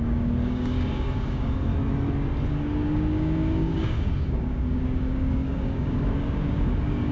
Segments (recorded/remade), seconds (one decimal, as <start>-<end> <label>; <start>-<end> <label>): 0.0-1.7 remade; 1.7-2.5 recorded; 2.5-7.1 remade